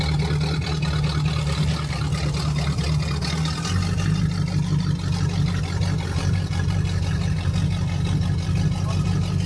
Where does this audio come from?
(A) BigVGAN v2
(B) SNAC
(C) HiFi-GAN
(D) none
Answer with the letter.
D